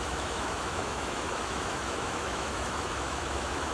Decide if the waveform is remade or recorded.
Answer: remade